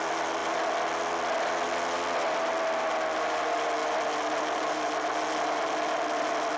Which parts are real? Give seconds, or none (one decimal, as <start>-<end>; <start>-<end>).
0.0-6.6